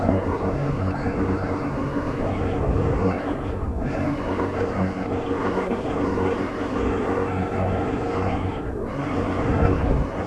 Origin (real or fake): fake